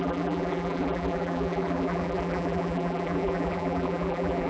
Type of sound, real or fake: fake